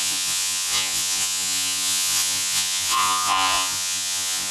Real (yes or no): no